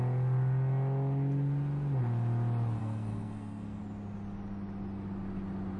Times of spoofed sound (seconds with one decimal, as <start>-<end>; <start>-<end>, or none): 2.8-3.8